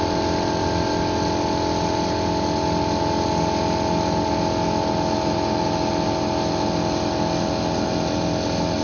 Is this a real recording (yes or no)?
yes